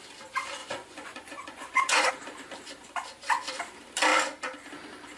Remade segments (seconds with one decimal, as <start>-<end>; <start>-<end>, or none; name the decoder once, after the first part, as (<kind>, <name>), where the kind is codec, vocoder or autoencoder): 0.6-2.1 (vocoder, Vocos)

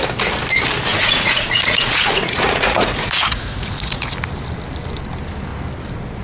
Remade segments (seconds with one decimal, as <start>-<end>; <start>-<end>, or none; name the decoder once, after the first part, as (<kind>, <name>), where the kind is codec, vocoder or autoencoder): 0.9-4.1 (vocoder, Vocos)

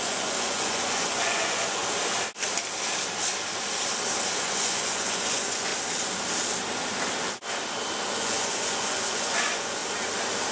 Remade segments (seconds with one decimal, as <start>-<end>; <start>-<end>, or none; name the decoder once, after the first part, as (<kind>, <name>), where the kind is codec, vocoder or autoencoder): 0.0-1.8 (vocoder, Vocos); 4.4-5.7; 8.2-9.8

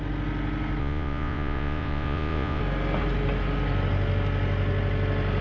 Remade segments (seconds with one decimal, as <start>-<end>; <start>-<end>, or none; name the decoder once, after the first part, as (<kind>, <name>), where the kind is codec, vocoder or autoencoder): 0.8-2.6 (vocoder, Vocos)

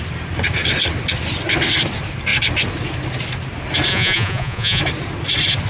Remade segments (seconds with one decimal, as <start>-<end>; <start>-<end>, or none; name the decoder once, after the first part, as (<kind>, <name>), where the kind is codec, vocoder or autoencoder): 3.9-4.8 (vocoder, Vocos)

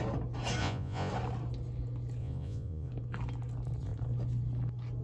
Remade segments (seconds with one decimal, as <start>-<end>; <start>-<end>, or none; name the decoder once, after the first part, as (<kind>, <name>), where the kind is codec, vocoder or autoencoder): 0.6-1.1 (vocoder, Vocos); 2.2-2.9

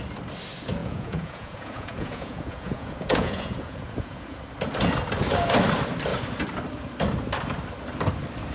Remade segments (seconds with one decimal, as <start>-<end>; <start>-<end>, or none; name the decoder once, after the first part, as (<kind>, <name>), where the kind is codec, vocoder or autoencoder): 0.8-4.4 (vocoder, Vocos)